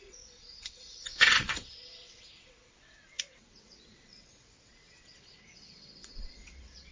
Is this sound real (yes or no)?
no